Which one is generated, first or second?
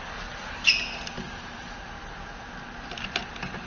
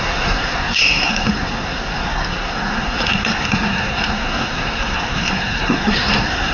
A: second